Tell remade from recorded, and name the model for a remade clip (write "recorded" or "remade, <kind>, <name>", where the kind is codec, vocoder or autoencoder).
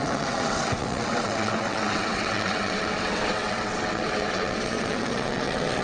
remade, vocoder, WaveNeXt